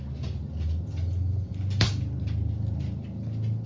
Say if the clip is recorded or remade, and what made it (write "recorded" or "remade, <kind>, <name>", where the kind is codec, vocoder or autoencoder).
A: recorded